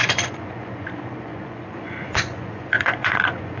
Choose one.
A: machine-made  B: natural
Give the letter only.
A